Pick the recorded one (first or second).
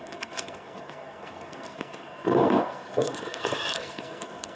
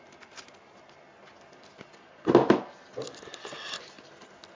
second